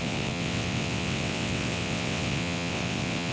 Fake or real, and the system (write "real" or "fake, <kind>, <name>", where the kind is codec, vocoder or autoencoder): fake, vocoder, WaveNeXt